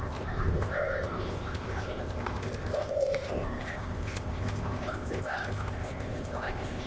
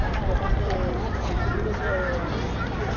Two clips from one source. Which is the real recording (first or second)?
second